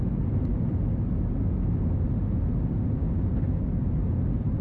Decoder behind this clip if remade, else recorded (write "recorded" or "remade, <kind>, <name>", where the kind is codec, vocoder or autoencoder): recorded